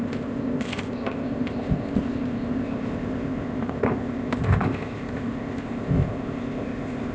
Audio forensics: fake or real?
fake